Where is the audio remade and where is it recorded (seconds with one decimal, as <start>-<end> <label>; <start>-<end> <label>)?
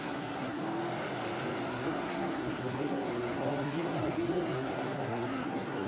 0.0-0.6 remade; 0.6-1.7 recorded; 1.7-5.9 remade